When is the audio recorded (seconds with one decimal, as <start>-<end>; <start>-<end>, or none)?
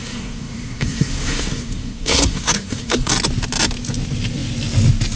3.1-5.2